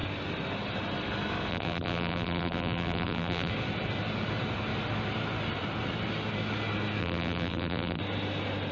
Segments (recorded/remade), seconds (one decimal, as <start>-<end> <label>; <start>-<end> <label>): 0.0-1.5 recorded; 1.5-3.5 remade; 3.5-7.0 recorded; 7.0-8.0 remade; 8.0-8.7 recorded